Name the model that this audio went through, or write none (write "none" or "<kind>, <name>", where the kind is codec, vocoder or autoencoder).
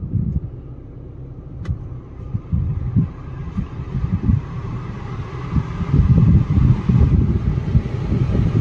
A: none